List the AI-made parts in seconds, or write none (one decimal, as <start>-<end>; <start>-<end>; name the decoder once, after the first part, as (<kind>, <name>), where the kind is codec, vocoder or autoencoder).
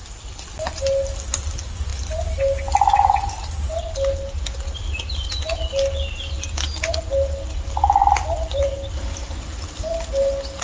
8.0-10.6 (vocoder, BigVGAN v2)